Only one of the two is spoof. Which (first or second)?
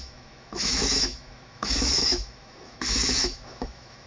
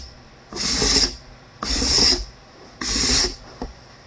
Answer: first